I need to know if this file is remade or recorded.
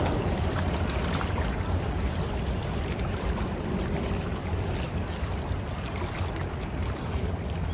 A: remade